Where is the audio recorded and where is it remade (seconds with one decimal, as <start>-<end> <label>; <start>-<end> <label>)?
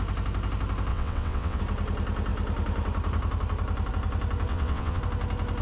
0.0-0.9 recorded; 0.9-1.6 remade; 1.6-4.5 recorded; 4.5-5.0 remade; 5.0-5.6 recorded